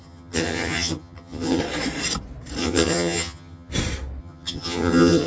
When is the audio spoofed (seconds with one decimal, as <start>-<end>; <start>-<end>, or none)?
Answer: 0.0-1.6; 2.6-3.7; 4.2-5.3